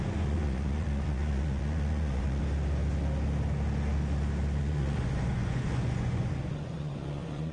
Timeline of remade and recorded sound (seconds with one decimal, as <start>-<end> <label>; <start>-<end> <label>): 0.0-2.4 remade; 2.4-4.6 recorded; 4.6-7.5 remade